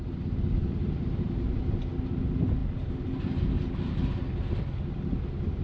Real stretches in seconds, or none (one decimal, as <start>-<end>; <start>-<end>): 0.0-0.8; 1.6-5.6